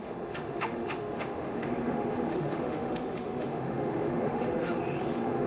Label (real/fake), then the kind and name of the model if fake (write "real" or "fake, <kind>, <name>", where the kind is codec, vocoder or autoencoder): fake, autoencoder, DAC-VAE